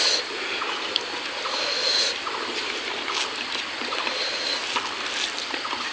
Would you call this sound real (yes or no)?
yes